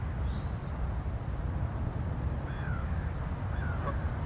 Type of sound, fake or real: real